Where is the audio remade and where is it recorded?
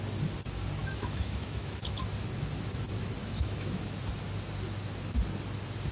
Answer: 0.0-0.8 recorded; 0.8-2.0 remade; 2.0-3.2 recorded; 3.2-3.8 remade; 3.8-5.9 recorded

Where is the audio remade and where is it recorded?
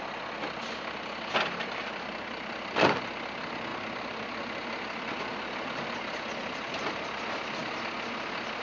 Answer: 0.0-8.6 recorded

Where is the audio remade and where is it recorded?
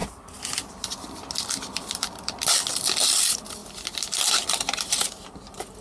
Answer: 0.0-5.8 recorded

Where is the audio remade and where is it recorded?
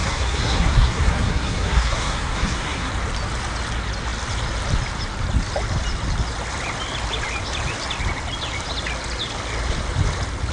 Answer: 0.0-2.9 remade; 2.9-10.5 recorded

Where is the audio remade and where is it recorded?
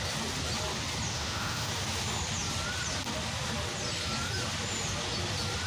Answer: 0.0-1.1 recorded; 1.1-1.7 remade; 1.7-5.7 recorded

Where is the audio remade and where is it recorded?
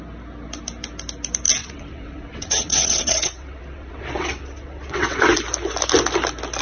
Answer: 0.0-1.6 recorded; 1.6-5.3 remade; 5.3-6.6 recorded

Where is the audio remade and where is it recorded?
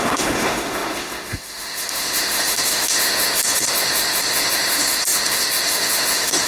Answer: 0.0-6.5 remade